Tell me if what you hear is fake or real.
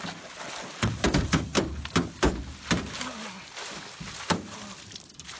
real